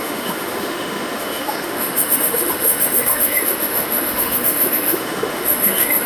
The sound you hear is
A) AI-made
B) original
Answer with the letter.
A